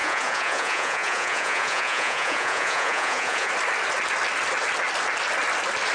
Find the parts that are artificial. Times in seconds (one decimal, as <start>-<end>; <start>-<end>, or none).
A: 0.0-3.5